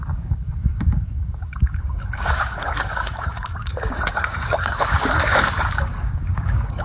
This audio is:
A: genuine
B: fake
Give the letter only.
B